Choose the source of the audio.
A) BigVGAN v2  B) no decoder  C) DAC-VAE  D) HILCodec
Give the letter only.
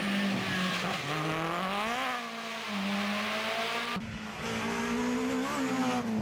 B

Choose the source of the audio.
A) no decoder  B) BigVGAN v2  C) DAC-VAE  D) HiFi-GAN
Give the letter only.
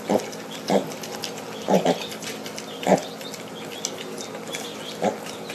A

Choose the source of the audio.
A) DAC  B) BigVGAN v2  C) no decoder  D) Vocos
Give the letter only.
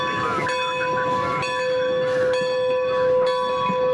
C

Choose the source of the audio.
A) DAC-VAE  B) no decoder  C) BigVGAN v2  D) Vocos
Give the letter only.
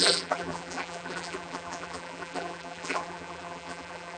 C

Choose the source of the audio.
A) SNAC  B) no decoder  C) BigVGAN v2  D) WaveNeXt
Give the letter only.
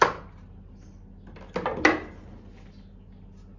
B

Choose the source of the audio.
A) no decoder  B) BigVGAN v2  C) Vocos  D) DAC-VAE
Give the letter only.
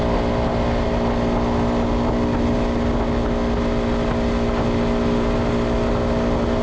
A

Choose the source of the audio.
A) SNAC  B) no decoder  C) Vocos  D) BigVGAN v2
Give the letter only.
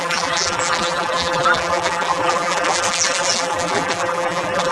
D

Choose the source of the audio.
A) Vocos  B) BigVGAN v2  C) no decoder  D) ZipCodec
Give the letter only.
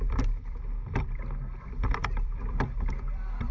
B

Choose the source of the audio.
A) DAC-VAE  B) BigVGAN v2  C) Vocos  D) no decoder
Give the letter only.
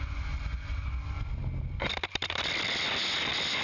D